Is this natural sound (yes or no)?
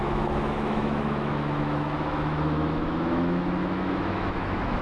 no